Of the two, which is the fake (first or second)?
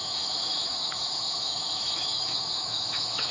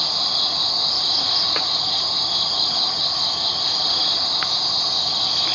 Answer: first